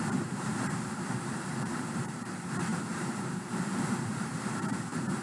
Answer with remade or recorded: remade